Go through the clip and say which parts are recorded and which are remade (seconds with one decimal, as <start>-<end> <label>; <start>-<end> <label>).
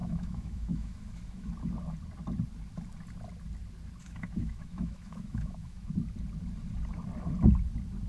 0.0-1.5 remade; 1.5-4.0 recorded; 4.0-5.9 remade; 5.9-8.1 recorded